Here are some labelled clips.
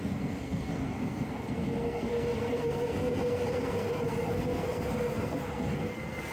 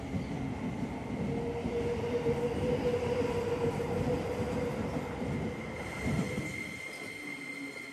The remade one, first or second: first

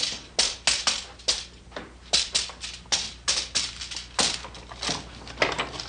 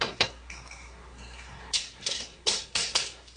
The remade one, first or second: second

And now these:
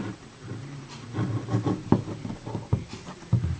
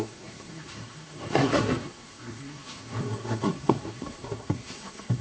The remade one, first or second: second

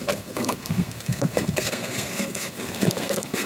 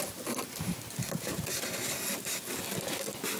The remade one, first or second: first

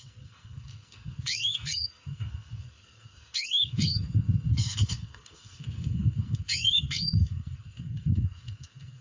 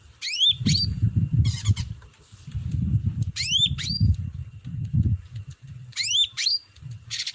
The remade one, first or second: first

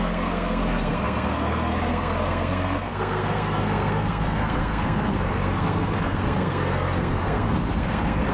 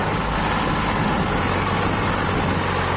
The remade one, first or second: first